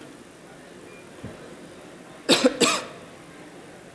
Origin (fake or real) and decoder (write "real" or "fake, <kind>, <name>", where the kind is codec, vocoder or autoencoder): real